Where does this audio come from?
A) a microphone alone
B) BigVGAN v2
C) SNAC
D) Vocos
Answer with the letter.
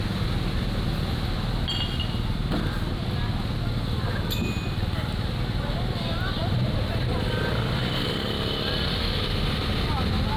A